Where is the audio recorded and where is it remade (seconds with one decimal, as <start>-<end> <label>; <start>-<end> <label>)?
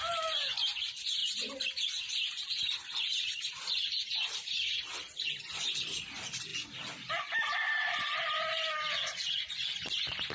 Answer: 0.0-10.3 recorded